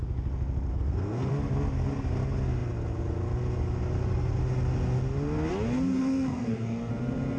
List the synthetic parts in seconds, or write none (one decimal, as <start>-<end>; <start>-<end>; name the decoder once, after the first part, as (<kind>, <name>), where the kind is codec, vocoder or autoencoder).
0.7-1.3 (codec, SNAC); 6.0-6.9